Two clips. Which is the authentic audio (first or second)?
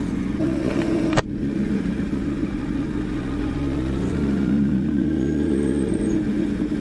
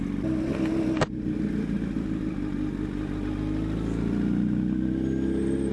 second